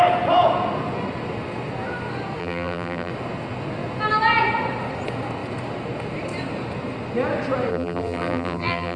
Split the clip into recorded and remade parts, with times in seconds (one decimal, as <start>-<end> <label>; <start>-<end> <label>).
0.0-2.4 recorded; 2.4-3.1 remade; 3.1-7.7 recorded; 7.7-9.0 remade